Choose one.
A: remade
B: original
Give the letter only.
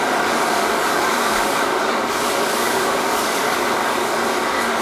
A